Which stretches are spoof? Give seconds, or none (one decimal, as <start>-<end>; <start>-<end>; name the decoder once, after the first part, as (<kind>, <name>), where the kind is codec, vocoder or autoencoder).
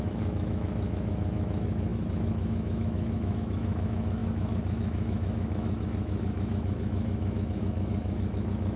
0.0-8.8 (autoencoder, DAC-VAE)